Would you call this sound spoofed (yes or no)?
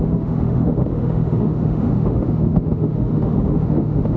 yes